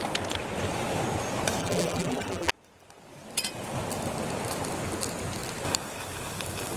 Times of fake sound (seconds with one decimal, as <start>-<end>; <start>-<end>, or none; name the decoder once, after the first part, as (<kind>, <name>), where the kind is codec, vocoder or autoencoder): 1.6-2.5 (vocoder, BigVGAN v2)

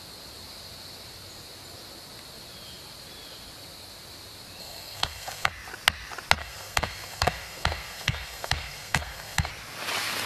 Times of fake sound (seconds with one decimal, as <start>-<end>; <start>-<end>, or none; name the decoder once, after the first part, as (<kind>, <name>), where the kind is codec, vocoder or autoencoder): 4.6-5.5 (codec, SNAC); 6.4-9.5

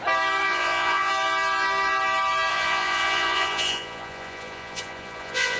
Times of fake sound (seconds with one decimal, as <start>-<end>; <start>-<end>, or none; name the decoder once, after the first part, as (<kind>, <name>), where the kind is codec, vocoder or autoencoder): 0.5-1.1 (vocoder, Vocos); 2.5-5.6